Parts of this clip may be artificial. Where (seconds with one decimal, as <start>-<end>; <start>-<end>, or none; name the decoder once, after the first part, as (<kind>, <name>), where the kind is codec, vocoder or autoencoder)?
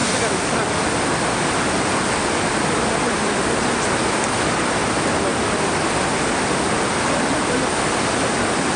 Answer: none